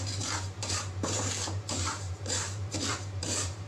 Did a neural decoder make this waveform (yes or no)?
yes